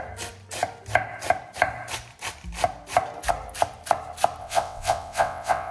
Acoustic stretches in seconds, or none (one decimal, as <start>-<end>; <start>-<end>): 0.0-4.4